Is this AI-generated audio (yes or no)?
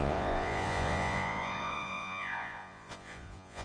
yes